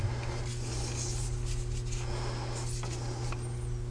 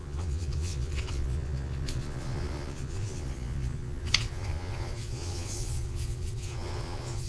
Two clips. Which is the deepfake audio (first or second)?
second